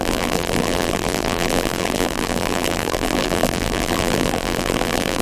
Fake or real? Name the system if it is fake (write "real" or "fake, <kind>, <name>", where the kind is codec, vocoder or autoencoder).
fake, vocoder, BigVGAN v2